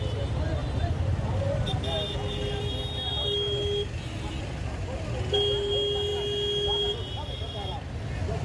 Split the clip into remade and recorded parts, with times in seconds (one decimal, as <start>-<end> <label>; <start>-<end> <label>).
0.0-8.4 recorded